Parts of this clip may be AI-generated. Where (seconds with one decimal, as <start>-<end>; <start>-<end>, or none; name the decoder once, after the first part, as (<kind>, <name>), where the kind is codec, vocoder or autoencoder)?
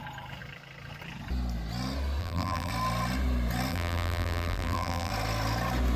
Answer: 2.2-2.7 (vocoder, BigVGAN v2); 3.7-5.1